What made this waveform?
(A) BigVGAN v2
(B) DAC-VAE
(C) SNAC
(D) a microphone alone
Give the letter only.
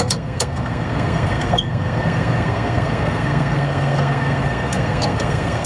C